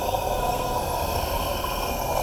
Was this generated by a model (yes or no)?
yes